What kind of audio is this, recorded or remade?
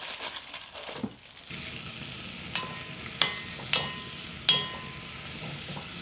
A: recorded